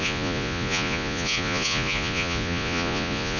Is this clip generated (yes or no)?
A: yes